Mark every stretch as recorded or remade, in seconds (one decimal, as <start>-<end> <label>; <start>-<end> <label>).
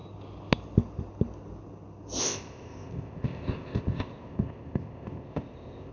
0.0-2.2 recorded; 2.2-5.9 remade